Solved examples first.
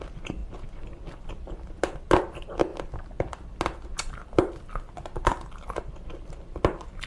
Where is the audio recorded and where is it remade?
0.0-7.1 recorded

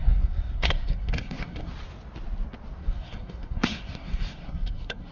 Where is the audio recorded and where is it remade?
0.0-1.7 remade; 1.7-2.8 recorded; 2.8-5.1 remade